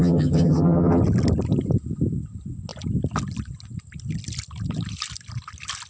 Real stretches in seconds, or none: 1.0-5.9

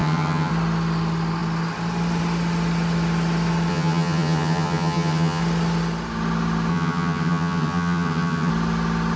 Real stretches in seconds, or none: 0.5-3.7; 5.4-6.7; 8.5-9.2

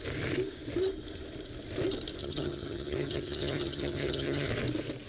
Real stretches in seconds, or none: 0.0-2.2; 4.5-5.1

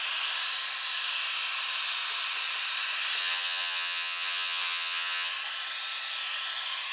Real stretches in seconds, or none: 0.0-3.2; 5.3-6.9

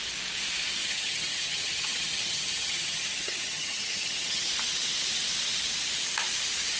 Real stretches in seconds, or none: 0.0-0.8; 4.5-6.8

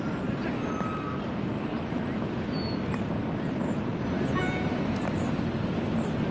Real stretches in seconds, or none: 0.0-6.3

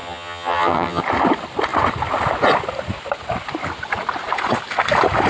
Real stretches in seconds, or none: 1.0-5.3

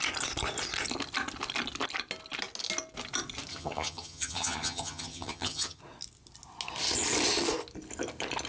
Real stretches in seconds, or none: 0.0-3.5; 5.8-8.5